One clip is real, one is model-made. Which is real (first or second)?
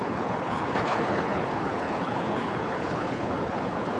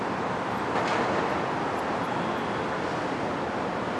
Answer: second